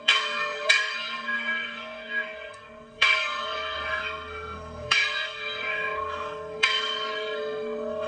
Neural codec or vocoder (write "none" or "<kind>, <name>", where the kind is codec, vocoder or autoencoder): codec, SNAC